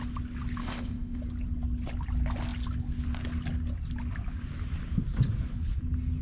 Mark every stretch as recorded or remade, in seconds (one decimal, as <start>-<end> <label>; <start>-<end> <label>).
0.0-0.6 recorded; 0.6-1.2 remade; 1.2-6.2 recorded